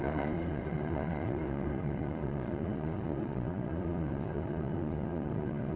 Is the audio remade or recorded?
remade